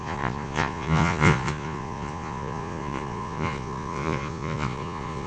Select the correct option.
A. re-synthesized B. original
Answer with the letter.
A